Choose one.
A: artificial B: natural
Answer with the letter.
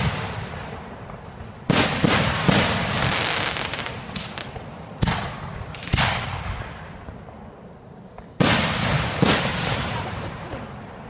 B